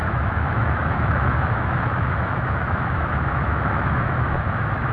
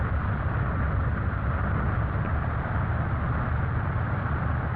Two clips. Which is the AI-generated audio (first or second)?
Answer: first